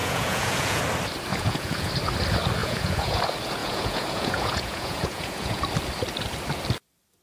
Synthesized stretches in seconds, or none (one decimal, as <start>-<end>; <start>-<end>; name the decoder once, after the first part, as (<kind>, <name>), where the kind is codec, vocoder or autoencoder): 0.0-0.8 (vocoder, Vocos); 1.3-1.9; 2.6-3.2; 3.6-5.6

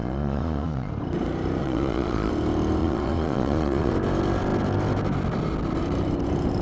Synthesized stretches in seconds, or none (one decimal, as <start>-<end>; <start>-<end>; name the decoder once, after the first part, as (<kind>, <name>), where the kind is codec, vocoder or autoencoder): 0.0-0.9 (vocoder, Vocos); 1.6-2.3; 2.8-3.9

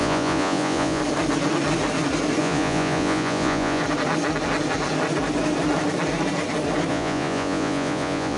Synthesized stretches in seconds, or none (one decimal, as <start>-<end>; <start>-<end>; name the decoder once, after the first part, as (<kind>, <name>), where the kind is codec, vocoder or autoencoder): 0.0-1.0 (vocoder, Vocos); 2.4-3.8; 6.9-8.4

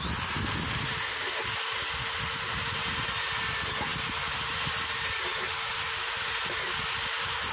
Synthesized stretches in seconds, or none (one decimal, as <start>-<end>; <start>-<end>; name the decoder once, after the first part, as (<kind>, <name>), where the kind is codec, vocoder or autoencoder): none

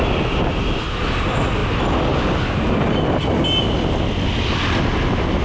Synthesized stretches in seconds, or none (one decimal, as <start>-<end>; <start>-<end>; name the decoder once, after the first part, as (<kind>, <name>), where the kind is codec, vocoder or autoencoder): none

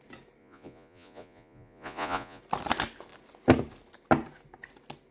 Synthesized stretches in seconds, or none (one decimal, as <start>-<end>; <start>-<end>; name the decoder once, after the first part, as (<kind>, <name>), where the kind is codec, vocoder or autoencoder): 0.4-2.4 (vocoder, Vocos)

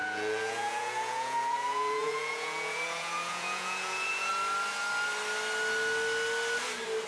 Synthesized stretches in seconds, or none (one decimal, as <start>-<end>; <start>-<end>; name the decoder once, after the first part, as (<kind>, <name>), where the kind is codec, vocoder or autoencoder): 0.0-4.3 (vocoder, Vocos)

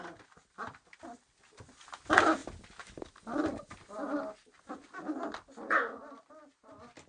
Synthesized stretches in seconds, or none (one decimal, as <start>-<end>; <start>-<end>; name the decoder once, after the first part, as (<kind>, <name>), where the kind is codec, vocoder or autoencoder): none